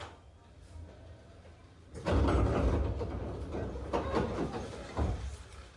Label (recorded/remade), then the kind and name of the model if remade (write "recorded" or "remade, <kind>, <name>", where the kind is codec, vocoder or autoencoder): recorded